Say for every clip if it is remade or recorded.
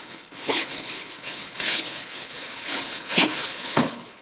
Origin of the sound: remade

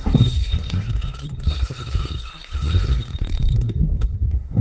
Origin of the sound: remade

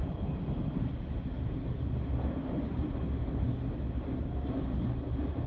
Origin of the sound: recorded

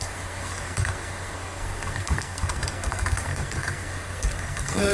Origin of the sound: remade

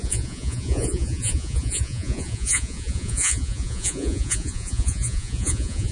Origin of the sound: remade